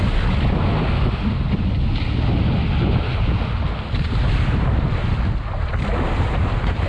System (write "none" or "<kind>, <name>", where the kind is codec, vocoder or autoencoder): none